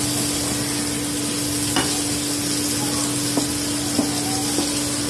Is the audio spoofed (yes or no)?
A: no